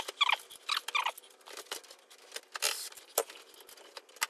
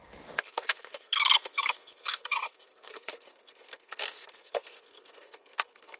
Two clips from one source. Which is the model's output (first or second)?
second